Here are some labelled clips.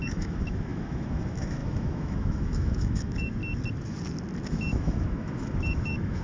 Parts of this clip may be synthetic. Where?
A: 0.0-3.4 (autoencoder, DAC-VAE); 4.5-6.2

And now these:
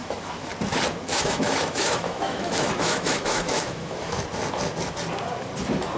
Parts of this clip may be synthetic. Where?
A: 0.0-0.5 (autoencoder, DAC-VAE); 1.1-4.2

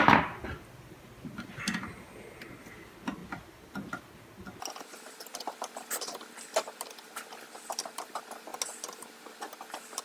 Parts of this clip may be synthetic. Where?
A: none

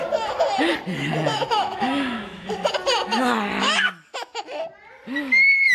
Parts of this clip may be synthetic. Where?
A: 1.3-2.5 (autoencoder, DAC-VAE); 3.6-4.4

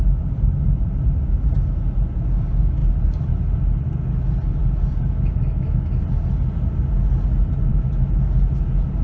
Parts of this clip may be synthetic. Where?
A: 5.4-6.0 (autoencoder, DAC-VAE); 7.7-8.2

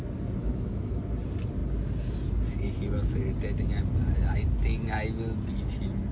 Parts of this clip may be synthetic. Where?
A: 0.4-1.0 (autoencoder, DAC-VAE)